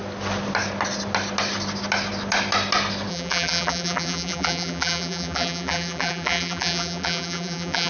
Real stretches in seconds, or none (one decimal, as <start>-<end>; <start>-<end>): 0.0-3.1